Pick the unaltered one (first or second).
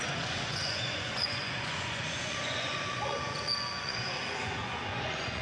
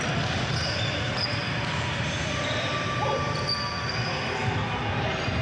second